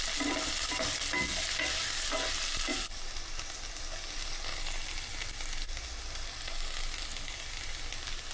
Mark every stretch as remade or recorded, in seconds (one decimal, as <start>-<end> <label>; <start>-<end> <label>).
0.0-2.7 recorded; 2.7-3.8 remade; 3.8-8.3 recorded

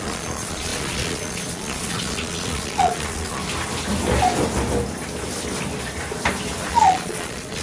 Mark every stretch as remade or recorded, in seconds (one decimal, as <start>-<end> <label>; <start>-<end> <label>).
0.0-3.4 remade; 3.4-6.7 recorded; 6.7-7.6 remade